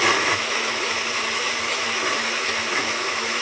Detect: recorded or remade remade